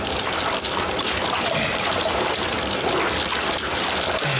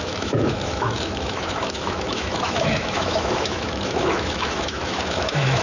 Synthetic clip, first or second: second